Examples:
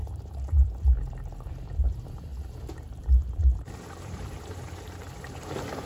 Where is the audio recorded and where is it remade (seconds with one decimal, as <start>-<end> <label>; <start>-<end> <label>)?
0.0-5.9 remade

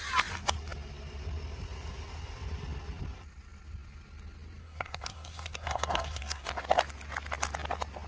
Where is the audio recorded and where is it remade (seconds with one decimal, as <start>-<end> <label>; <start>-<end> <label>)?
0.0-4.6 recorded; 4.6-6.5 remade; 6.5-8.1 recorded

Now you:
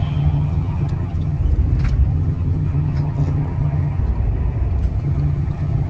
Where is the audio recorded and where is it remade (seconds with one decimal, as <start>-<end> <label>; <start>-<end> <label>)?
0.0-1.4 remade; 1.4-2.1 recorded; 2.1-4.0 remade; 4.0-5.0 recorded; 5.0-5.9 remade

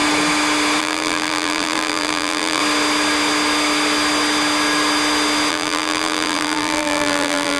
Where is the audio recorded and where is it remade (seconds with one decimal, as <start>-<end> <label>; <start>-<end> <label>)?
0.0-0.8 recorded; 0.8-2.6 remade; 2.6-5.5 recorded; 5.5-7.6 remade